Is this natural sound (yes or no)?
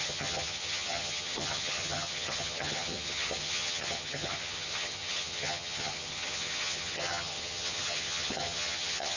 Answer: no